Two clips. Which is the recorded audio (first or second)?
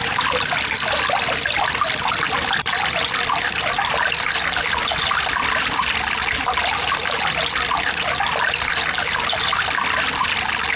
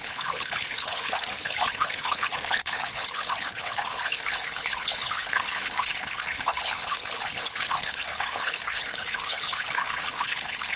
first